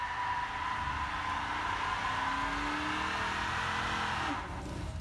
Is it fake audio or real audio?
real